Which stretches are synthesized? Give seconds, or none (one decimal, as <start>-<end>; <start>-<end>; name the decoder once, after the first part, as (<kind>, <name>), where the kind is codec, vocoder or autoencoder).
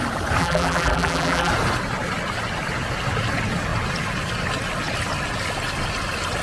0.4-1.5 (vocoder, BigVGAN v2)